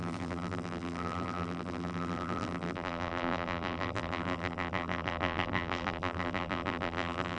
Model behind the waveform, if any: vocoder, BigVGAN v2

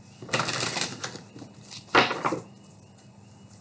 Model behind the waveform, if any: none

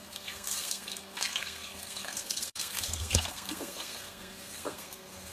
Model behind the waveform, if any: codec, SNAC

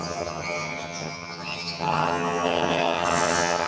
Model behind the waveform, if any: vocoder, HiFi-GAN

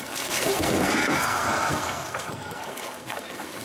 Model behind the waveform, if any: codec, SNAC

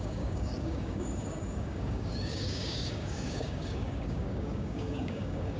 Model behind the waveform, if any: codec, DAC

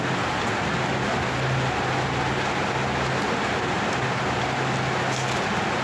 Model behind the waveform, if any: none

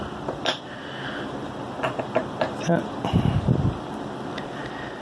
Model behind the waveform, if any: vocoder, BigVGAN v2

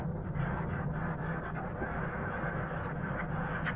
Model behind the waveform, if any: none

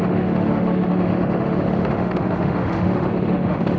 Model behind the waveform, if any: autoencoder, DAC-VAE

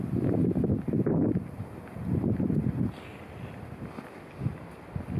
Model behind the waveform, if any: none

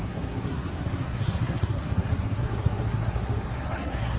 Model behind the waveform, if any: codec, SNAC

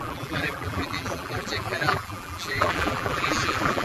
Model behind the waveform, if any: vocoder, BigVGAN v2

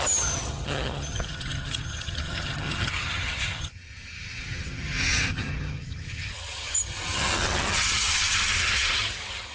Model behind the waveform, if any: vocoder, HiFi-GAN